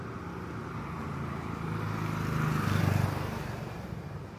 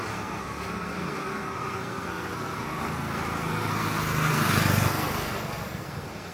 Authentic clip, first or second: first